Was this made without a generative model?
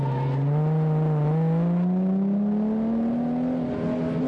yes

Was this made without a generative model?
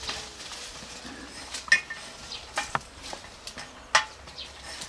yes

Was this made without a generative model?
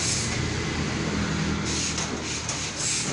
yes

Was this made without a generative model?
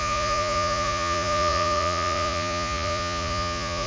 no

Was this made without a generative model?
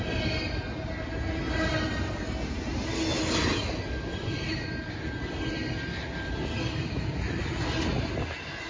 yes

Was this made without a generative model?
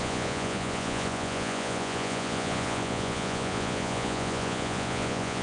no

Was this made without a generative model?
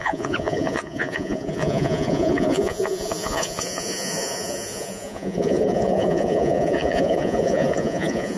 no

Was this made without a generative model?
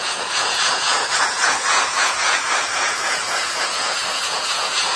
no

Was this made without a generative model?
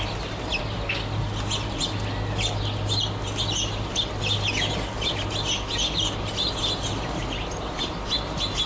yes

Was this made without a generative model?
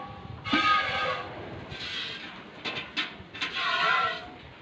yes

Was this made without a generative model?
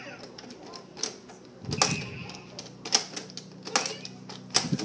yes